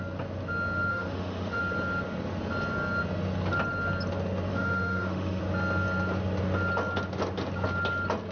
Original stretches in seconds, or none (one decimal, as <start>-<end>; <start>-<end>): 0.0-0.9; 1.6-4.5; 5.4-8.3